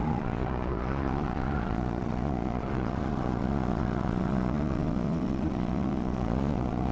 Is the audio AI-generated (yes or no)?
yes